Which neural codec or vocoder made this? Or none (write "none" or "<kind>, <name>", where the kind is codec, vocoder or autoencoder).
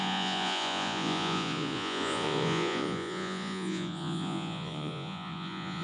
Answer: vocoder, Vocos